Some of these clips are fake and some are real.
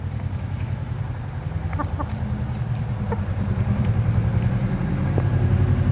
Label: fake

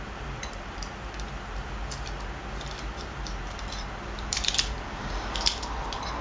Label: fake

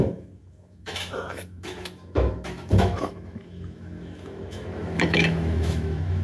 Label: fake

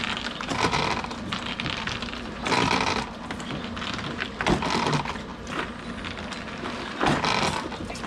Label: real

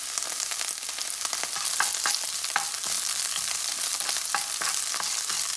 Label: real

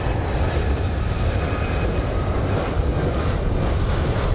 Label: real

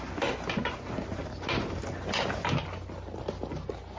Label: real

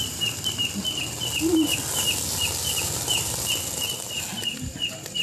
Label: real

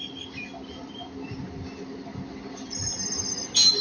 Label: real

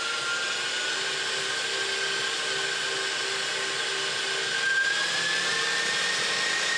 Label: real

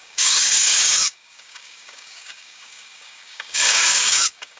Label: fake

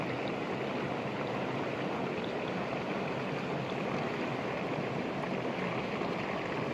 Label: real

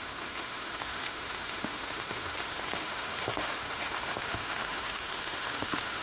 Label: fake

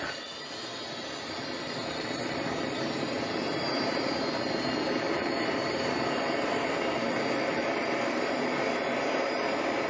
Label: fake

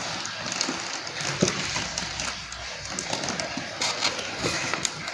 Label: real